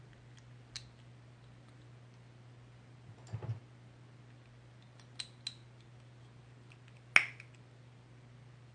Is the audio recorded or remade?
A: recorded